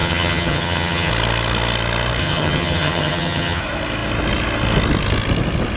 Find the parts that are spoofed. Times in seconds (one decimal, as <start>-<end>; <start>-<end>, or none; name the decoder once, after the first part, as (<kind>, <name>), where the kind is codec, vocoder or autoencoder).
0.0-1.1 (vocoder, HiFi-GAN); 2.2-3.6

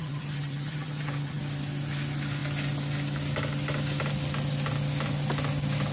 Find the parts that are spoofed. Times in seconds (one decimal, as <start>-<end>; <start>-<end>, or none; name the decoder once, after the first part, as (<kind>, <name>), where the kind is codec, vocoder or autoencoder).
0.0-1.4 (vocoder, HiFi-GAN)

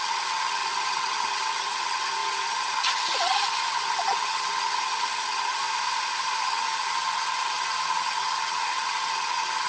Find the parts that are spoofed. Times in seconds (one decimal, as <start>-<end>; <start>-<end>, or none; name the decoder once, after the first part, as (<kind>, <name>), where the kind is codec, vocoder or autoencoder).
0.0-5.6 (vocoder, HiFi-GAN); 6.4-9.7